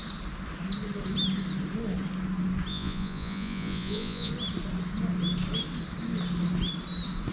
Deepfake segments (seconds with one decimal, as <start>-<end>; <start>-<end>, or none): 2.7-4.3